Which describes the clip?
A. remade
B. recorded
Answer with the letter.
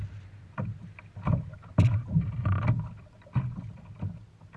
B